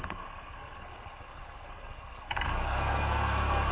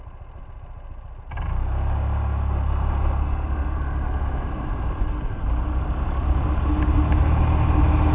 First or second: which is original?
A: second